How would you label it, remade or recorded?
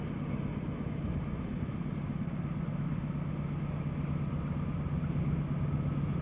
recorded